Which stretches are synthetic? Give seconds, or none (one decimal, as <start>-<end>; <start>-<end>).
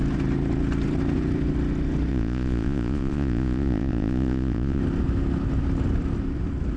2.1-4.8